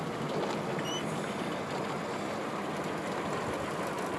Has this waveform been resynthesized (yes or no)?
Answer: no